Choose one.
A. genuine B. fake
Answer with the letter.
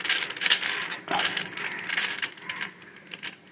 A